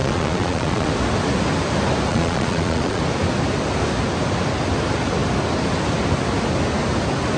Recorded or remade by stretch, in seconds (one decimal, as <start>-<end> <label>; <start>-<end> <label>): 0.0-0.9 remade; 0.9-2.1 recorded; 2.1-3.0 remade; 3.0-7.4 recorded